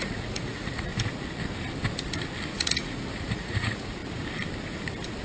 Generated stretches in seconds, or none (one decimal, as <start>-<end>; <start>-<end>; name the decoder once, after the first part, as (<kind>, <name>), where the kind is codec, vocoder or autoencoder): 0.0-0.9 (vocoder, Vocos); 2.5-4.0